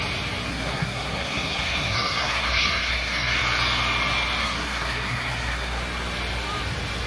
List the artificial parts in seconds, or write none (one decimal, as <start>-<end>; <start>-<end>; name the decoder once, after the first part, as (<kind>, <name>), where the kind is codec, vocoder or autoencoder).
0.5-3.4 (codec, SNAC); 4.4-5.8